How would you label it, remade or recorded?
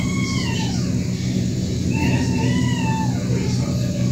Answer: recorded